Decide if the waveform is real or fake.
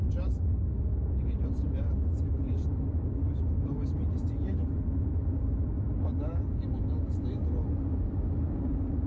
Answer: real